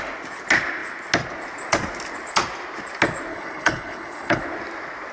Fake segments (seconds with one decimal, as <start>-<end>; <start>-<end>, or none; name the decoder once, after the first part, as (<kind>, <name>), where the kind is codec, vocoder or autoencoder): 3.3-4.4 (codec, HILCodec)